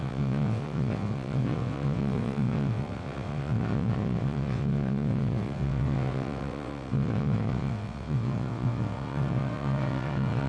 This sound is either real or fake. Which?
fake